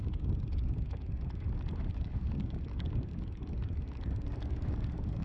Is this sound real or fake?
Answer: fake